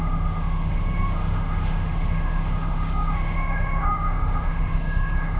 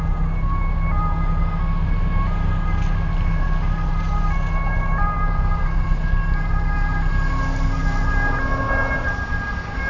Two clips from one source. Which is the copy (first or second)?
first